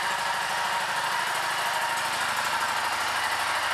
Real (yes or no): yes